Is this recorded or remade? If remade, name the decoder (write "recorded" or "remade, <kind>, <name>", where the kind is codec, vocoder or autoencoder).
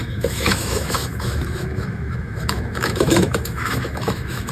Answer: remade, autoencoder, DAC-VAE